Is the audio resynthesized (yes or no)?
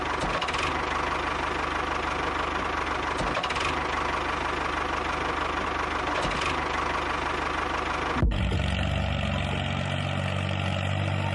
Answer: no